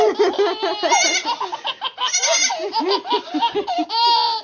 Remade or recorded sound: recorded